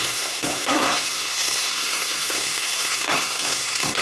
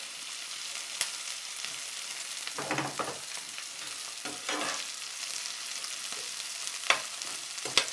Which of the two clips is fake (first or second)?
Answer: first